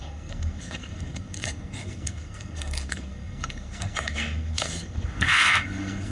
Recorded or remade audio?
remade